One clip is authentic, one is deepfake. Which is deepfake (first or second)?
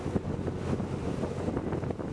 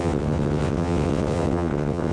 second